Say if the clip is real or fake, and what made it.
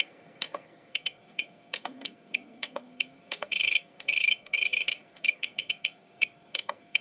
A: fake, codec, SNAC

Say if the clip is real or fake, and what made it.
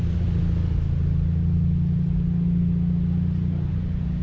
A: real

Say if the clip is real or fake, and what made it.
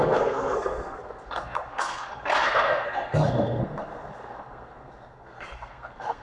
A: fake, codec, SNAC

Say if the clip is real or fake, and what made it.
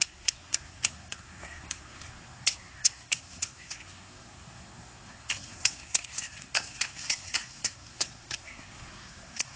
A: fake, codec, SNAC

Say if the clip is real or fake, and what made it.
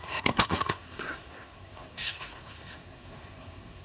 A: fake, codec, SNAC